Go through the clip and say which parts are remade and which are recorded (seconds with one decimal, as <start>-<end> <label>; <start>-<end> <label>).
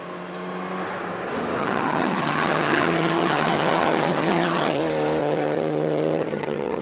0.0-1.6 recorded; 1.6-4.8 remade; 4.8-5.2 recorded; 5.2-6.8 remade